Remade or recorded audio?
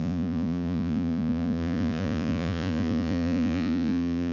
remade